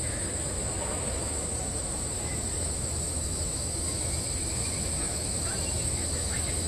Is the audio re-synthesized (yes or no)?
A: yes